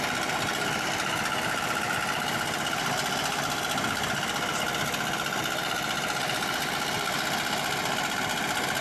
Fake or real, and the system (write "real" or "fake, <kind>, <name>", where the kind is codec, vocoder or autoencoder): real